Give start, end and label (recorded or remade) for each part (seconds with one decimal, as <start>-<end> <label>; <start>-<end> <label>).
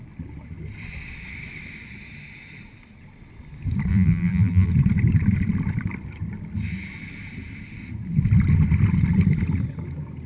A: 0.0-3.9 recorded; 3.9-4.7 remade; 4.7-10.3 recorded